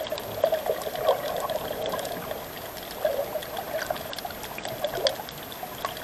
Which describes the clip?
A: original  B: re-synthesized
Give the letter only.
A